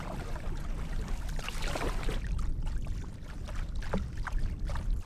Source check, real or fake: real